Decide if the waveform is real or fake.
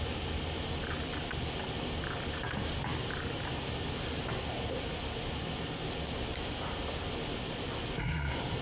real